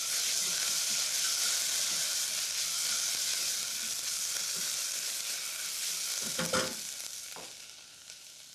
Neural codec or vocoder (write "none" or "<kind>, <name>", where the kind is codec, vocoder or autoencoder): none